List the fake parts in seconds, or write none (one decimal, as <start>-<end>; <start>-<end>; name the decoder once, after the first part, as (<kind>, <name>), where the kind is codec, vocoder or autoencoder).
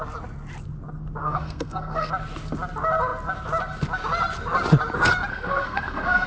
1.2-2.1 (codec, SNAC); 5.3-6.3